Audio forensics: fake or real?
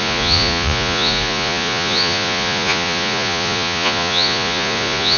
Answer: fake